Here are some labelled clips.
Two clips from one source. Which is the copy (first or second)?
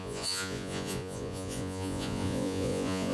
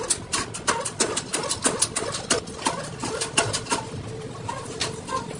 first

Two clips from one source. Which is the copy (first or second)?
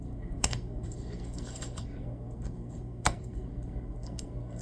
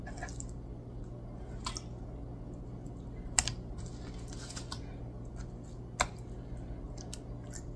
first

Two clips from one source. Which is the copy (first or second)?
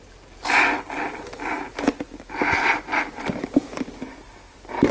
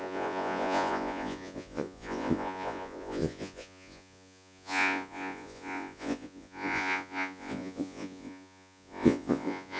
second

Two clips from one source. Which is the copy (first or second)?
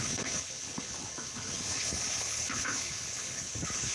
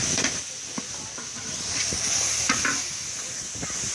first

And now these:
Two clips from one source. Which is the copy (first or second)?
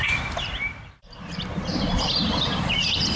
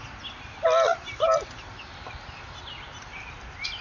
first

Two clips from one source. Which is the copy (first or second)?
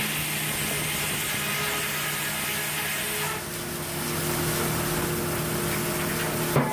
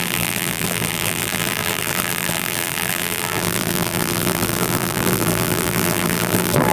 second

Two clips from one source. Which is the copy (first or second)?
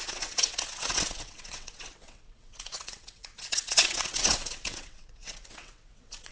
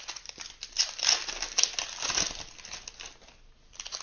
first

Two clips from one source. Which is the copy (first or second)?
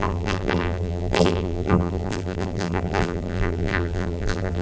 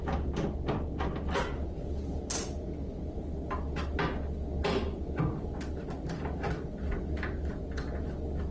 first